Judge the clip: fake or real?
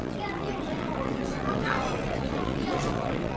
fake